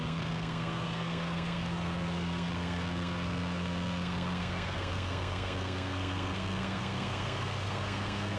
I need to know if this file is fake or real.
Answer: fake